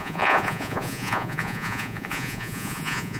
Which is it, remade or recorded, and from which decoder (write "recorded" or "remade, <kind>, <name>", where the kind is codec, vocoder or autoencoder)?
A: remade, vocoder, Vocos